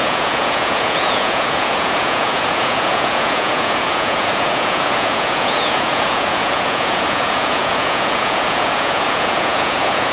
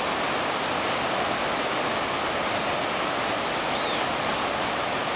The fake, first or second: first